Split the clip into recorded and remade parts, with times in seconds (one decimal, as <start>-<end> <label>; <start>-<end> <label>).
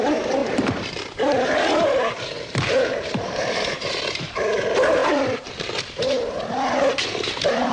0.0-7.7 remade